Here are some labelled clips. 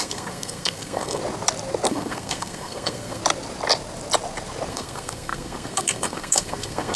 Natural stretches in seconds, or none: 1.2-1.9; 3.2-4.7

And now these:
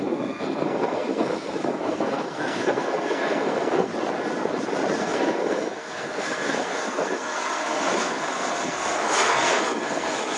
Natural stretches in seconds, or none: 3.9-5.0

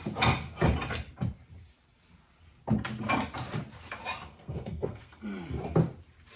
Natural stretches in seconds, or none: 0.0-4.3; 5.2-6.4

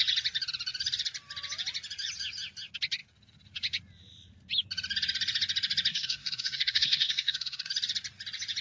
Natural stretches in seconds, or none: 0.0-5.9; 7.7-8.6

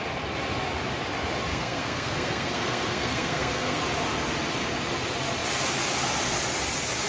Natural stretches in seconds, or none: 0.0-1.5; 3.8-7.1

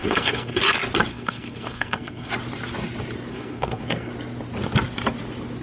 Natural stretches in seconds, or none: 0.6-1.1; 2.3-3.3; 4.1-5.6

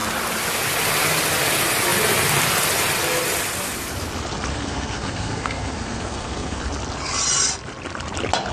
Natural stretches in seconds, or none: 0.0-4.5; 6.6-8.5

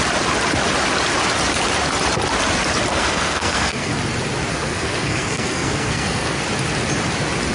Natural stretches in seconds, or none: 0.0-2.9; 3.9-4.5; 6.4-7.5